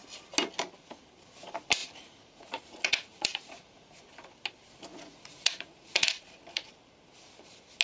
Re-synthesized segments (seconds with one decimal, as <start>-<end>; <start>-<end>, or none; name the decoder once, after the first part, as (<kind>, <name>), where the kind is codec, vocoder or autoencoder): 1.8-4.0 (vocoder, Vocos); 4.9-6.7